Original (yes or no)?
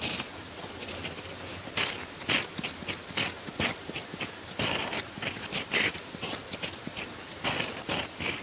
yes